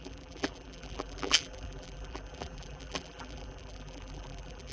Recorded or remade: remade